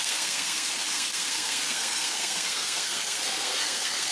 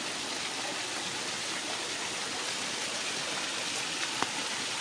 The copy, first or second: first